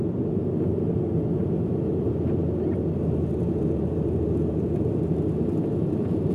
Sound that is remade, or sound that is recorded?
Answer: remade